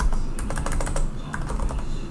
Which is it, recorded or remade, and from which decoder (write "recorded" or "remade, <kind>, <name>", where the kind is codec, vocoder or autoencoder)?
recorded